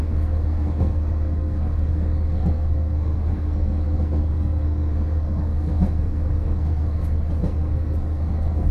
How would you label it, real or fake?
fake